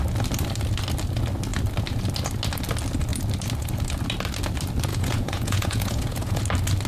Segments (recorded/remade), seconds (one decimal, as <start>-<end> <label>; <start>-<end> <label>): 0.0-4.9 recorded; 4.9-6.4 remade; 6.4-6.9 recorded